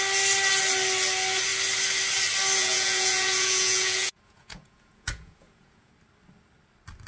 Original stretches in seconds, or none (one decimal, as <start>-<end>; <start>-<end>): 0.0-2.6; 5.9-7.1